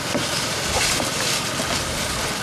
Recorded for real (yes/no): yes